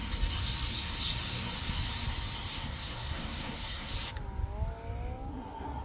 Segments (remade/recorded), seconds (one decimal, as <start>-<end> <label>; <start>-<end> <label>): 0.0-2.5 recorded; 2.5-3.9 remade; 3.9-5.3 recorded; 5.3-5.8 remade